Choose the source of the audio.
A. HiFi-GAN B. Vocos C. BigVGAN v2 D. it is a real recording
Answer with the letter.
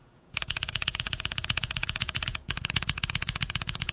B